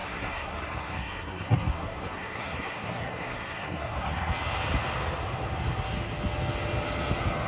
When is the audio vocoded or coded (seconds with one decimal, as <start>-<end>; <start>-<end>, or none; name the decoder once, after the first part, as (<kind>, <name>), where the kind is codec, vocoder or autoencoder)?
0.0-4.3 (codec, SNAC)